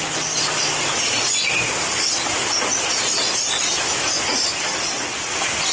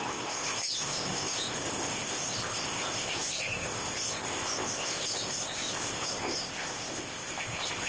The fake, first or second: second